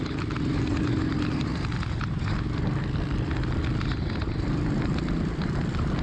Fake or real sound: real